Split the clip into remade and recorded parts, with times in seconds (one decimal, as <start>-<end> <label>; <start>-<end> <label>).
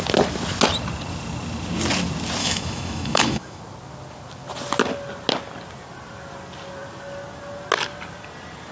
0.0-2.4 recorded; 2.4-3.6 remade; 3.6-8.7 recorded